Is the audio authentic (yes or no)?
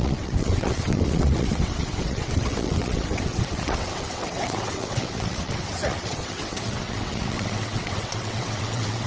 no